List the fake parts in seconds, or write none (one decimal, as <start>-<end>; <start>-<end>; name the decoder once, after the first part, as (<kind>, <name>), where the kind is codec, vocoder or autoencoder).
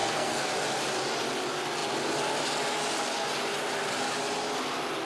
0.0-0.5 (codec, SNAC)